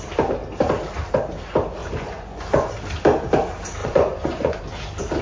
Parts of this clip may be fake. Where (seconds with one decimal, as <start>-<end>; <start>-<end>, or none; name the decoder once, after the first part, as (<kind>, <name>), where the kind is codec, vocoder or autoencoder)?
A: 1.8-2.8 (vocoder, Vocos); 3.8-4.6